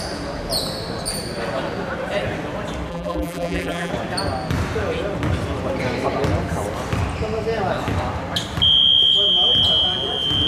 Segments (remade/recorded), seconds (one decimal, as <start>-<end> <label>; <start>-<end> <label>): 0.0-2.9 recorded; 2.9-3.9 remade; 3.9-10.5 recorded